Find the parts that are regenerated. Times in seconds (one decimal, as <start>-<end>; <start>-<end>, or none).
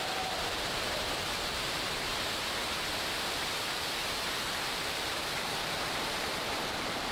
0.0-2.1; 3.6-4.0; 4.6-7.1